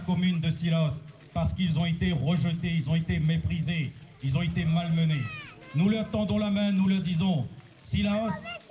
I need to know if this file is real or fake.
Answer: real